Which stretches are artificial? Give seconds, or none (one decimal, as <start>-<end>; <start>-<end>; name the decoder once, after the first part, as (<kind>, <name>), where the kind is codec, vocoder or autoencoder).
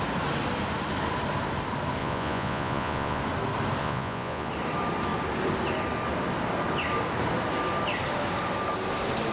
2.0-3.2 (vocoder, Vocos); 3.8-4.5